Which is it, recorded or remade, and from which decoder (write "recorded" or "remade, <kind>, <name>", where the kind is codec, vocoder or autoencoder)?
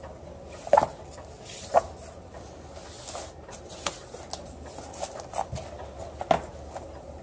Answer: recorded